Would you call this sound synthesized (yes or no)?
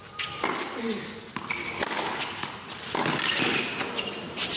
no